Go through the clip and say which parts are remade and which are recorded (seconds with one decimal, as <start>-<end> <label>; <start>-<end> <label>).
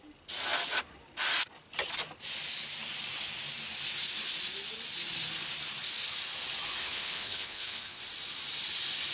0.0-6.8 recorded; 6.8-8.0 remade; 8.0-9.1 recorded